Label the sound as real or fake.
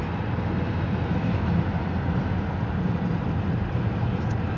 real